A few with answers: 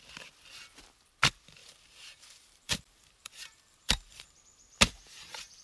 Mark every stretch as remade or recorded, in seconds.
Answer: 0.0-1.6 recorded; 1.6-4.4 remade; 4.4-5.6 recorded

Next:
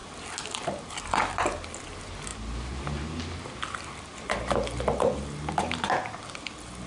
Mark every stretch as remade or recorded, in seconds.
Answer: 0.0-6.9 recorded

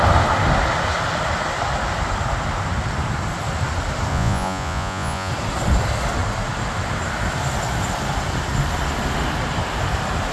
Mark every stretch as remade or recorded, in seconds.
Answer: 0.0-4.1 recorded; 4.1-5.3 remade; 5.3-10.3 recorded